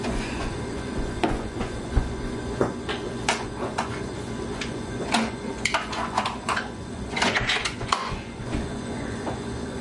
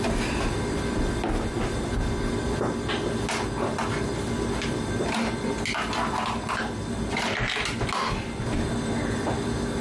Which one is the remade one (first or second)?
first